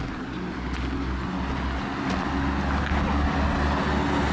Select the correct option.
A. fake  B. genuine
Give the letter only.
B